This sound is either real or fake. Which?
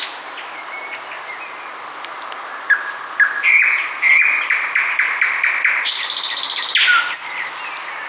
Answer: real